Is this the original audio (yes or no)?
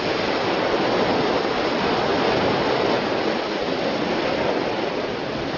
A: yes